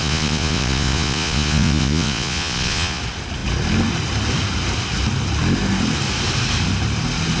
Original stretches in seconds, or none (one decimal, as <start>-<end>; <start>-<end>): 3.0-7.4